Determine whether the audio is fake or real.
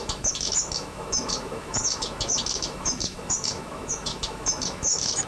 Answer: fake